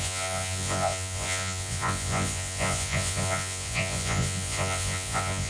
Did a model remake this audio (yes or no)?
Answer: yes